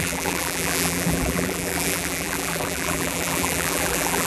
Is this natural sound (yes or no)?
no